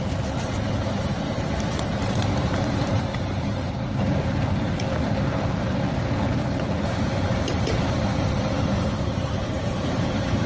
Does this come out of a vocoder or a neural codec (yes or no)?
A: yes